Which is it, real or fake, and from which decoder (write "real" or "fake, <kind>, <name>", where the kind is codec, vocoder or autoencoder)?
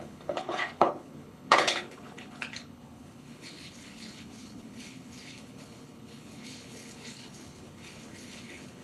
fake, codec, HILCodec